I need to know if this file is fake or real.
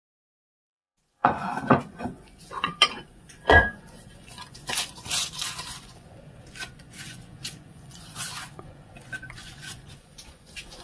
fake